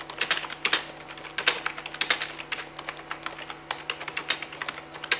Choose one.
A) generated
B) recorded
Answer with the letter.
B